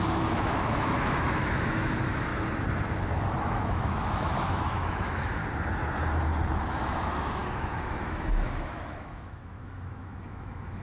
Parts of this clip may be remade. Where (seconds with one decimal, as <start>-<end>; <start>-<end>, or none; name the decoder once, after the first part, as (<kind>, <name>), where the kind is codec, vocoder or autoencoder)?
0.0-2.3 (autoencoder, DAC-VAE); 3.4-5.4; 6.7-10.8

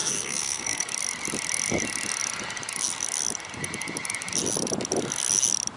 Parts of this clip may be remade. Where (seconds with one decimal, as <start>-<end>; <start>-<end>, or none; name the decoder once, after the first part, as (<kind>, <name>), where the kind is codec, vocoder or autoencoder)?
0.0-0.9 (codec, SNAC)

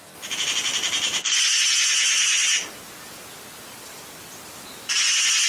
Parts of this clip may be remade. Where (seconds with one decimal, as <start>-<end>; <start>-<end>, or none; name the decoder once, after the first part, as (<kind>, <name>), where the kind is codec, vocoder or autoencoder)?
none

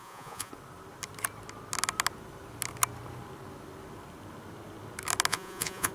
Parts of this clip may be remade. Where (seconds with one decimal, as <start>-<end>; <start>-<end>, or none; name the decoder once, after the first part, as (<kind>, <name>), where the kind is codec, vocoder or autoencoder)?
0.0-0.5 (vocoder, Vocos); 5.3-5.9

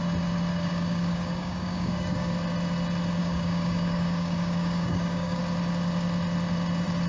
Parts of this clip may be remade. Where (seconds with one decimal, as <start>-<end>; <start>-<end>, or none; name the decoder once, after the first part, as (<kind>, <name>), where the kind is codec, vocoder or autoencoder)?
0.5-2.3 (codec, DAC); 3.2-5.4

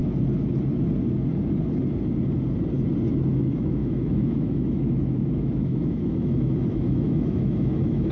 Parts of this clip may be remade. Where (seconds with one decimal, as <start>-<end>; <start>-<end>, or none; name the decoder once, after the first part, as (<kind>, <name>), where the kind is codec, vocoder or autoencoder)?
3.3-8.1 (autoencoder, DAC-VAE)

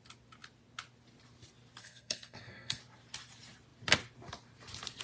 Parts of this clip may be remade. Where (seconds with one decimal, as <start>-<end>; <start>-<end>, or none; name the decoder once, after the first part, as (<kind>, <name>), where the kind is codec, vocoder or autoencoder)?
1.8-2.8 (codec, SNAC)